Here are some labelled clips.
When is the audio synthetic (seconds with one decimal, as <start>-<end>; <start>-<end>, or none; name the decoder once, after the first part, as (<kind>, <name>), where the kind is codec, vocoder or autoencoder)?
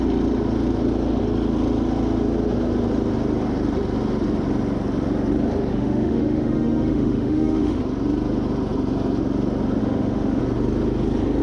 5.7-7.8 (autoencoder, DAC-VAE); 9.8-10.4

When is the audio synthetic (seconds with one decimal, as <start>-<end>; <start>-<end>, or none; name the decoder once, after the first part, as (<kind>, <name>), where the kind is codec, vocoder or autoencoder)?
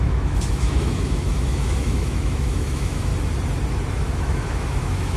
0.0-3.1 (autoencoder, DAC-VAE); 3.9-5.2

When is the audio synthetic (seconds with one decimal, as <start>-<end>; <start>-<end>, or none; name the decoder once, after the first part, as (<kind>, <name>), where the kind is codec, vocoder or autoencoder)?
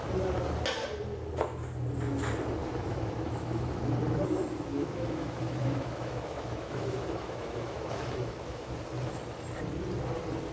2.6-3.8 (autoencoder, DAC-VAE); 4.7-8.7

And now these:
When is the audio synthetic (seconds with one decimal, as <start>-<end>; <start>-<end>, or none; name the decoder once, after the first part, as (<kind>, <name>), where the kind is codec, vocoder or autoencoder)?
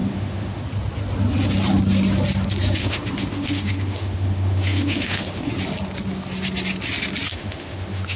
0.0-0.6 (autoencoder, DAC-VAE); 2.8-5.5; 7.3-8.2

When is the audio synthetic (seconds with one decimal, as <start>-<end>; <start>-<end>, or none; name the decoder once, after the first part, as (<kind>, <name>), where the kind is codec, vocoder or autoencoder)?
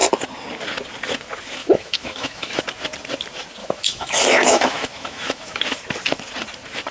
1.6-2.6 (autoencoder, DAC-VAE); 3.6-5.6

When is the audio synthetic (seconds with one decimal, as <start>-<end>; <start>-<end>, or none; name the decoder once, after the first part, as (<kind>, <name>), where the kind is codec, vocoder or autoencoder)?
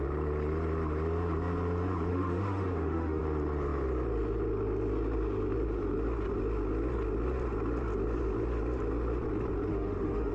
2.1-3.2 (autoencoder, DAC-VAE); 9.7-10.3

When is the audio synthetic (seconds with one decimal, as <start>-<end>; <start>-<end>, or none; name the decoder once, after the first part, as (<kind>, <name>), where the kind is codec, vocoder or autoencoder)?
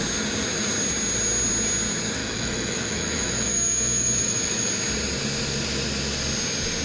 2.2-4.8 (autoencoder, DAC-VAE)